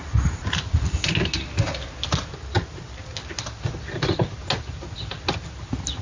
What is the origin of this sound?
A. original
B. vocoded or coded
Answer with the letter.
A